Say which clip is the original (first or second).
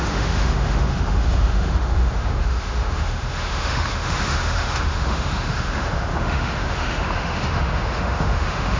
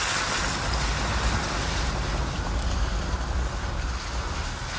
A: second